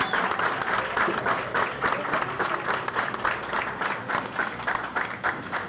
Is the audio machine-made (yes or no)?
no